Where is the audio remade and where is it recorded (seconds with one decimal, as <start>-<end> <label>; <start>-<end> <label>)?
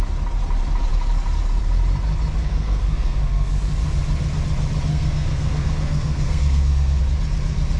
0.0-2.4 recorded; 2.4-3.5 remade; 3.5-4.9 recorded; 4.9-7.0 remade; 7.0-7.8 recorded